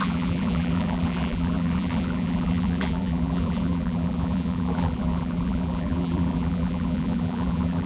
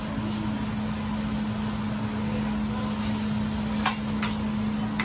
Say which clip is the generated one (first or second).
first